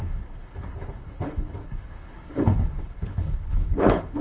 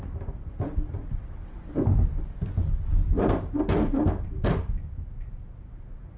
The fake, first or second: first